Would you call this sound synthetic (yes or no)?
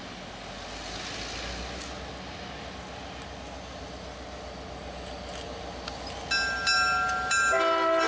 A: no